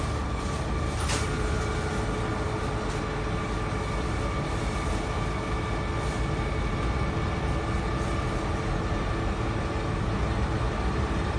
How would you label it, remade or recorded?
recorded